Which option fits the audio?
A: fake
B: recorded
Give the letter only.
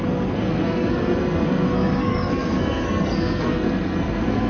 A